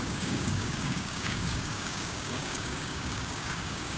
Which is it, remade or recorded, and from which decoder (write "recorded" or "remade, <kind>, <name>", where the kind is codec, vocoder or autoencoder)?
remade, codec, DAC